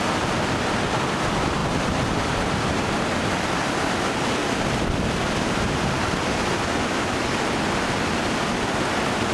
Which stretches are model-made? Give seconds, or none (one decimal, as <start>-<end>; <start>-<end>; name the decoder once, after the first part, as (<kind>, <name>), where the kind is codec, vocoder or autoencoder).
none